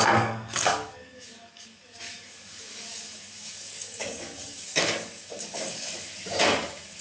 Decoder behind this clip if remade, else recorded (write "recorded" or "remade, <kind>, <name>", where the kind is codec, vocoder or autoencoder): remade, codec, DAC